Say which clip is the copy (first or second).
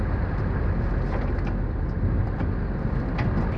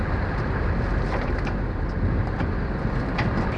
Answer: second